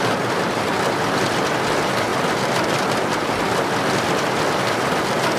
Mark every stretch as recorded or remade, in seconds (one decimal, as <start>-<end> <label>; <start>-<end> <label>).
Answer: 0.0-5.4 recorded